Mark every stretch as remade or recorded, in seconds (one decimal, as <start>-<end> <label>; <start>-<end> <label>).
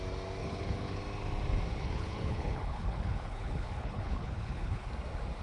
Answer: 0.0-0.4 recorded; 0.4-1.0 remade; 1.0-1.7 recorded; 1.7-4.9 remade; 4.9-5.4 recorded